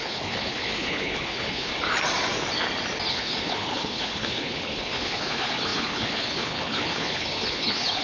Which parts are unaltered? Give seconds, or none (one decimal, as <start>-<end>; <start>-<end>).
1.7-3.1